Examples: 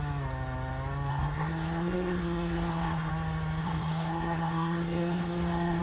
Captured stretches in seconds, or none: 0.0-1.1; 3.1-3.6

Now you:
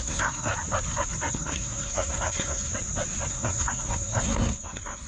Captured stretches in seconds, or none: 0.5-1.3; 2.7-3.3

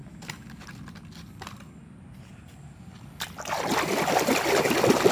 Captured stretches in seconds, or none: 0.0-5.1

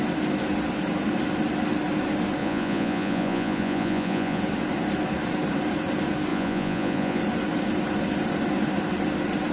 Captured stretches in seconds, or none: 0.0-2.4; 4.4-6.3; 7.2-9.5